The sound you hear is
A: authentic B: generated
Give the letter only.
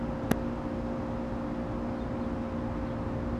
A